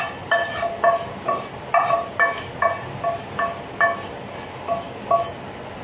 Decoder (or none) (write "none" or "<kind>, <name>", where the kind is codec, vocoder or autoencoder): none